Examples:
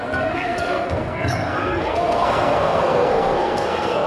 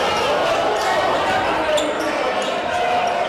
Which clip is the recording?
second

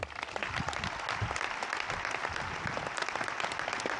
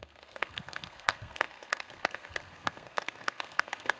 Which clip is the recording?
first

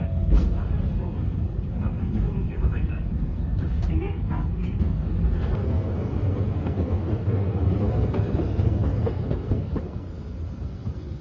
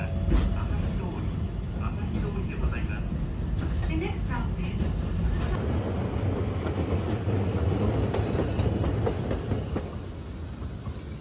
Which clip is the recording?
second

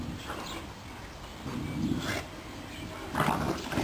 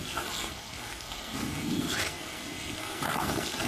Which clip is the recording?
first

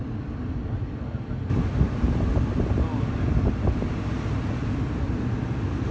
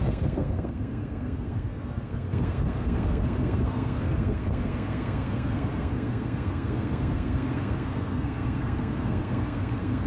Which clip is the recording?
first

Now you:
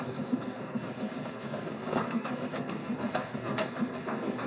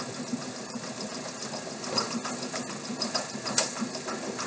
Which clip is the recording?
second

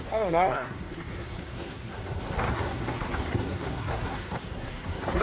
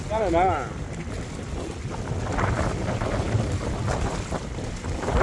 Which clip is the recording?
second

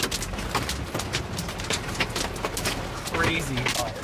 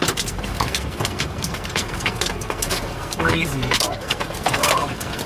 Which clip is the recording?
first